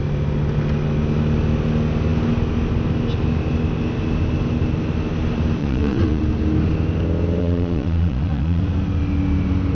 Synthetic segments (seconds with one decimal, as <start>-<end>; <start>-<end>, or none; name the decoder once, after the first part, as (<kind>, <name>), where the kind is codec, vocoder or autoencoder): 5.6-6.2 (vocoder, Vocos); 7.4-8.6